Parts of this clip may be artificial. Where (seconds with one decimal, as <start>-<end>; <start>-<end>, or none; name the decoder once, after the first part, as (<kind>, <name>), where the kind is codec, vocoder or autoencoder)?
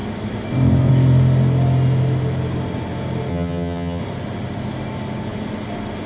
3.3-4.0 (vocoder, HiFi-GAN)